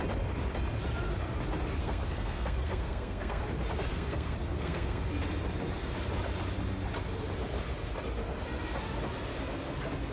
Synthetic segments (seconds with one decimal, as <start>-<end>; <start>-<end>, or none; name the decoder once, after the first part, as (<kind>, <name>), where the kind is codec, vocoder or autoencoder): 1.8-3.4 (codec, SNAC); 3.9-5.0